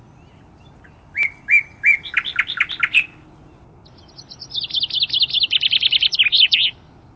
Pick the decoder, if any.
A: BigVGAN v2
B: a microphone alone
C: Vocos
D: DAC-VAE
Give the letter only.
B